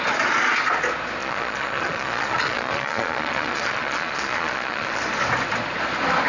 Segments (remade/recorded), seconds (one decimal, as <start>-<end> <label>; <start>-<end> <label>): 0.0-1.2 recorded; 1.2-5.0 remade; 5.0-6.3 recorded